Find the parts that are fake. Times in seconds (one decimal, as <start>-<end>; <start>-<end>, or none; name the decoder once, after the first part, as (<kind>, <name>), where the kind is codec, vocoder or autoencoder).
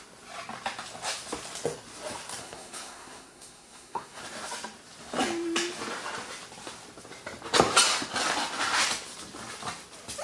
2.4-4.2 (codec, SNAC)